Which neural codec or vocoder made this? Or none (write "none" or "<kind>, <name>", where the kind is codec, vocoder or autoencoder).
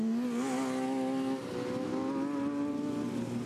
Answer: none